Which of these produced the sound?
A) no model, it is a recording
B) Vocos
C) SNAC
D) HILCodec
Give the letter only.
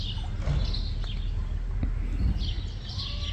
A